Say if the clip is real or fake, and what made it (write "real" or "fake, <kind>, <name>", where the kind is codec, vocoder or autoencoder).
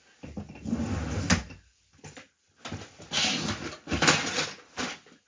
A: real